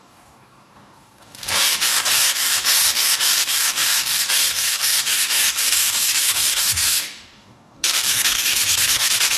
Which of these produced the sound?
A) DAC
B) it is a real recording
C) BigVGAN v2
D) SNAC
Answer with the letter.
A